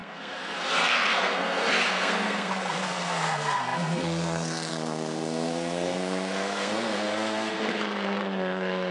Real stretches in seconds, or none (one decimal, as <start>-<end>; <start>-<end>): none